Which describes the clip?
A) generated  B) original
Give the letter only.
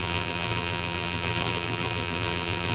A